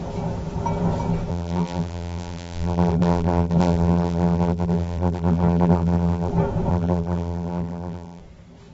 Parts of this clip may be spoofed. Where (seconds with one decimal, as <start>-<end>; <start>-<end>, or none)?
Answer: 1.3-6.3; 6.7-8.2